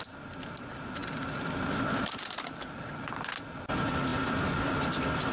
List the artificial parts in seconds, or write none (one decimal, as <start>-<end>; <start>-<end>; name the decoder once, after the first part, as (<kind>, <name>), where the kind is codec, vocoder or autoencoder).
none